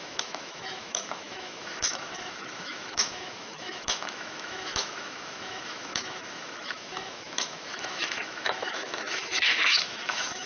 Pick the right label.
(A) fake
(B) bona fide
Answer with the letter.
A